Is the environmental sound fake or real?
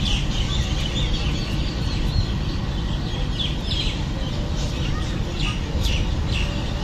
real